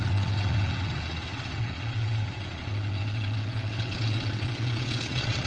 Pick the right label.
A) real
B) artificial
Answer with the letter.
B